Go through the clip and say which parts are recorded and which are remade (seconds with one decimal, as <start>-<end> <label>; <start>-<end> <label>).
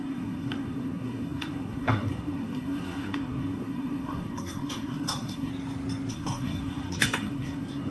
0.0-5.5 remade; 5.5-6.1 recorded; 6.1-7.9 remade